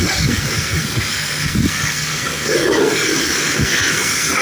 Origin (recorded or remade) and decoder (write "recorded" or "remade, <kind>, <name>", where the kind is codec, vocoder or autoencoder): remade, codec, SNAC